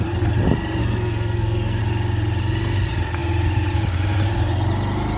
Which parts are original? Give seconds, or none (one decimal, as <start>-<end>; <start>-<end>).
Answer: 0.0-0.8; 1.8-5.2